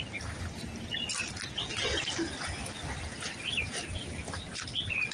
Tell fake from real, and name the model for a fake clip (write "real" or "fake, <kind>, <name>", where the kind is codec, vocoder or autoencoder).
real